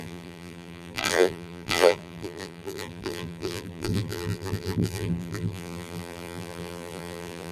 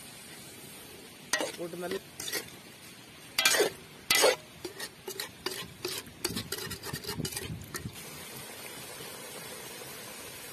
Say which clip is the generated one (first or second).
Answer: first